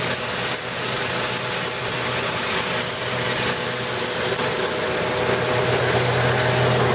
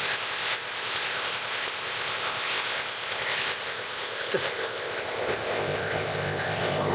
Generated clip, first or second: second